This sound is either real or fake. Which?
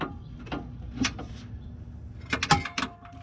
real